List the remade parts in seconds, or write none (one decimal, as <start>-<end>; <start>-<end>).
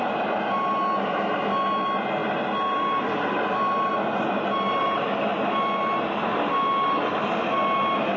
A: none